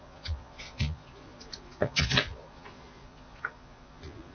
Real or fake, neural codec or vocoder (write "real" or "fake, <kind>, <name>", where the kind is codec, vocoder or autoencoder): fake, vocoder, Vocos